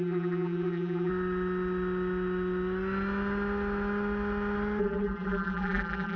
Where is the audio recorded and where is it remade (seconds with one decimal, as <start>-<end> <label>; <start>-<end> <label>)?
0.0-1.1 remade; 1.1-4.8 recorded; 4.8-6.2 remade